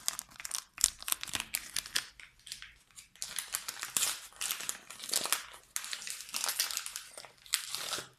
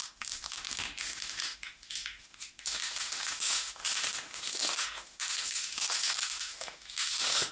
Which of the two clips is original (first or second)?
first